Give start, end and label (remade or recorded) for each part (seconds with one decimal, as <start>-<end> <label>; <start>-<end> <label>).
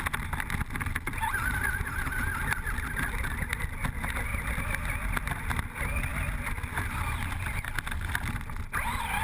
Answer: 0.0-9.2 recorded